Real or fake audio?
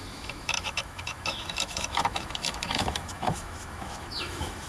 fake